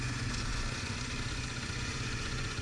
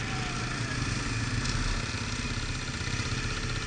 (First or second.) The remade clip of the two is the first